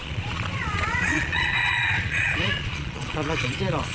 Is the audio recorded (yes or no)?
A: no